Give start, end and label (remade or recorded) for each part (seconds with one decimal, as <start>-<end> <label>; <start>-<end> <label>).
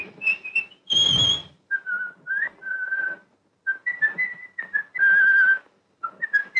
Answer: 0.0-6.6 recorded